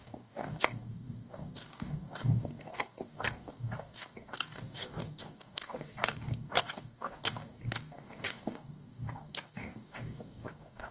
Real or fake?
fake